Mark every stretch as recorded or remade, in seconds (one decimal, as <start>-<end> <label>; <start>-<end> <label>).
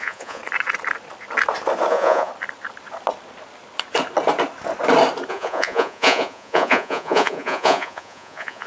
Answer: 0.0-0.4 remade; 0.4-1.9 recorded; 1.9-2.3 remade; 2.3-5.3 recorded; 5.3-8.7 remade